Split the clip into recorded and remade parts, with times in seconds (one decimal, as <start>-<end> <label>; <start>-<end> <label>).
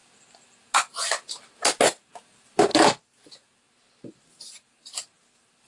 0.0-5.7 recorded